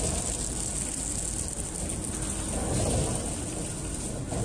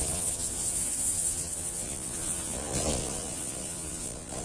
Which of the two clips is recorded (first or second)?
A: first